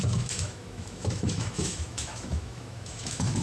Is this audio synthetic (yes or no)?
yes